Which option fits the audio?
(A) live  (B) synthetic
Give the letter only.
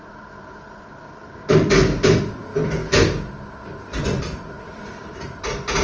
A